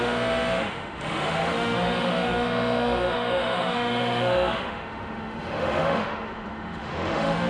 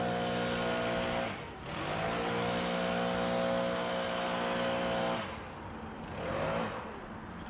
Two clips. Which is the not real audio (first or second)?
first